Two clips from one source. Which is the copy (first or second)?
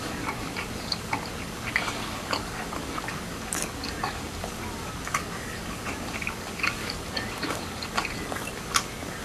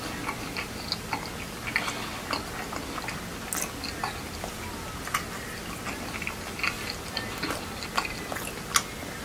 first